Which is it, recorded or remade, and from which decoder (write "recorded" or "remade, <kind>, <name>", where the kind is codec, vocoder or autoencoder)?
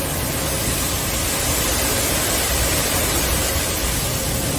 recorded